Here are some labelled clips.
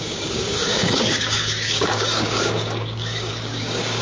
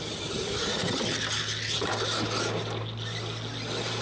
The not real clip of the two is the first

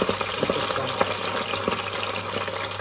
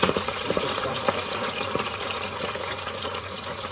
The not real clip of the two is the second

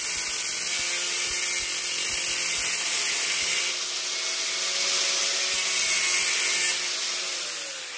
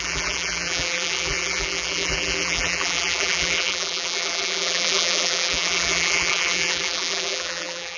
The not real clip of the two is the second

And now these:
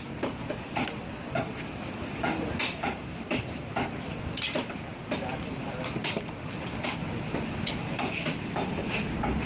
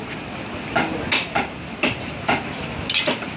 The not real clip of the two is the first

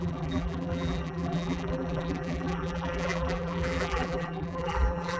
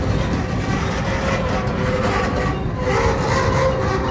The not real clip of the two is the first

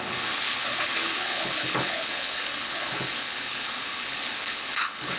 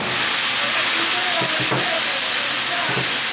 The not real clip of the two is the first